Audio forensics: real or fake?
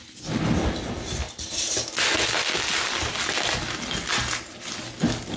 real